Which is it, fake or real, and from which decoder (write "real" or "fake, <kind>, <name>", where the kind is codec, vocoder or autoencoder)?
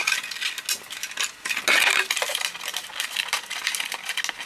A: real